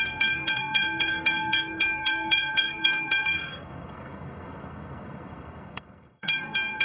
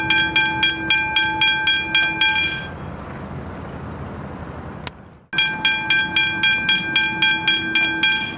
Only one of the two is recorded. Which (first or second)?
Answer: second